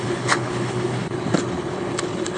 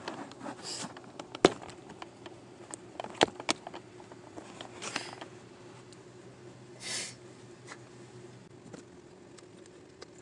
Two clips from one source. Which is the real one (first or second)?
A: second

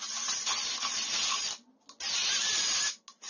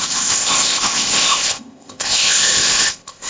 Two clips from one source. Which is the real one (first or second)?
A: first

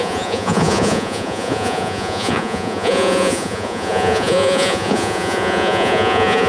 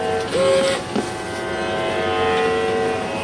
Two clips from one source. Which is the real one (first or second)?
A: second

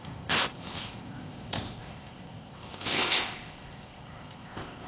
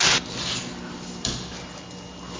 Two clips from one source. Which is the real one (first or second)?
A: second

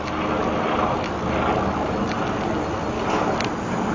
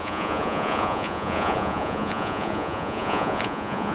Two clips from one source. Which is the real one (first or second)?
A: first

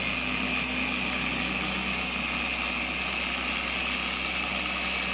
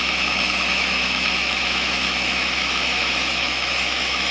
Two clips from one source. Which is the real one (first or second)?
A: first